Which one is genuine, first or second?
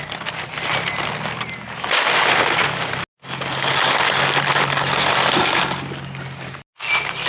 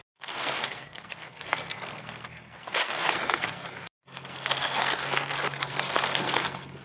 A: first